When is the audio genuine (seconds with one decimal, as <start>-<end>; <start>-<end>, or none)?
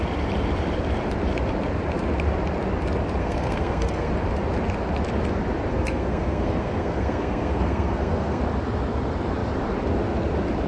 0.0-3.2; 4.1-5.7; 8.4-10.7